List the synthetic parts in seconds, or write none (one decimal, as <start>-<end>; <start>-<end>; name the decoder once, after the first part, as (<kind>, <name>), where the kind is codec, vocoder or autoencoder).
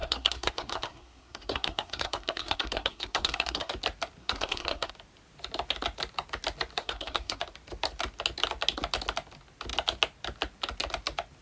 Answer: 0.0-3.7 (codec, SNAC); 4.2-4.9; 6.8-7.4